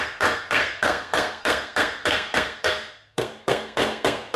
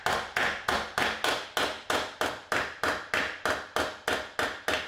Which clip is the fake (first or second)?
first